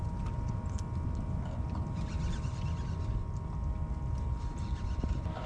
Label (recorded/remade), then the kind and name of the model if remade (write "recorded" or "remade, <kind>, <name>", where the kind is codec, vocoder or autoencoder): recorded